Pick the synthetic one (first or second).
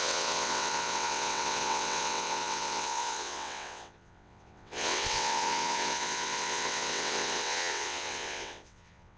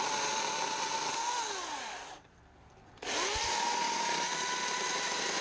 first